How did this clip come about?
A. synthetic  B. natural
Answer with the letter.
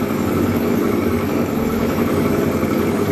A